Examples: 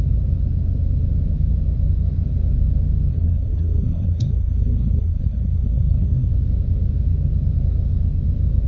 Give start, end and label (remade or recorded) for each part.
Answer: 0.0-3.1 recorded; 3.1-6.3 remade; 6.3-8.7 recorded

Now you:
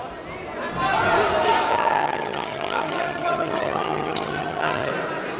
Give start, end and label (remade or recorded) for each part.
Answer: 0.0-1.7 recorded; 1.7-4.9 remade; 4.9-5.4 recorded

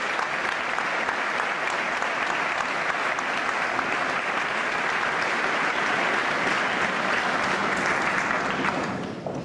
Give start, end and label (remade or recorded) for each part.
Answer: 0.0-9.4 recorded